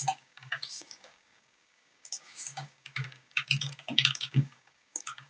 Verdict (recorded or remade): remade